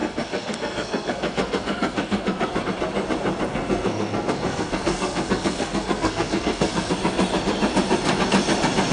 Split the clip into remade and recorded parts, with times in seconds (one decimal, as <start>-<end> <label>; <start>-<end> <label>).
0.0-2.6 remade; 2.6-3.5 recorded; 3.5-6.9 remade; 6.9-8.9 recorded